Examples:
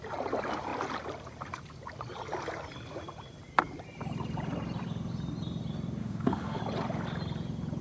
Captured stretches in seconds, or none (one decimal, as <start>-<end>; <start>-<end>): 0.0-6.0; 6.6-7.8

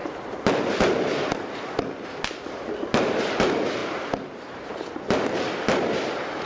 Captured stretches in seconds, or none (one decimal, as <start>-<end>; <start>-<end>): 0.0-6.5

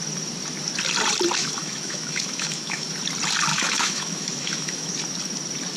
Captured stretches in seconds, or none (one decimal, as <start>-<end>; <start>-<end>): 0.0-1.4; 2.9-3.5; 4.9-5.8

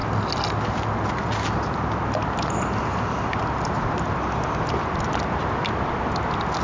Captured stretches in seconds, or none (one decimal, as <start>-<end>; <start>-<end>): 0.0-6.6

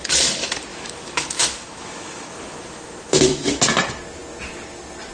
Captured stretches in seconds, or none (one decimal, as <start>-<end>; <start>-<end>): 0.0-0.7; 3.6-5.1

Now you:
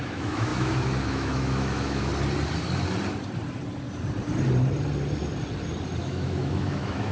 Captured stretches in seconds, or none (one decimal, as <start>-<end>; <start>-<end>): 2.1-6.0